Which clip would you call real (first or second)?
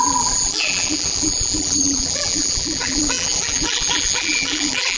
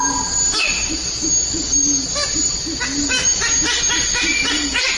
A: second